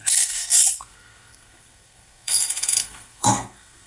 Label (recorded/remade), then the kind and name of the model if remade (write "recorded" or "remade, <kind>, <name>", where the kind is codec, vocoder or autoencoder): remade, codec, SNAC